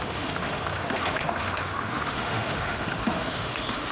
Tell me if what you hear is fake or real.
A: fake